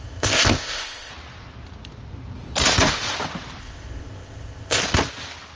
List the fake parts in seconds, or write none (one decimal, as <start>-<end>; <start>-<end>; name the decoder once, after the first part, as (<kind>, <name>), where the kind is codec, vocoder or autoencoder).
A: 0.0-1.1 (codec, ZipCodec); 3.6-4.8